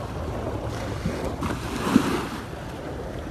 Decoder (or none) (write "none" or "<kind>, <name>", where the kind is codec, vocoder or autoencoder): none